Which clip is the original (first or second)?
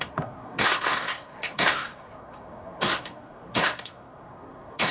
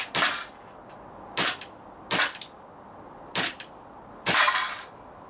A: second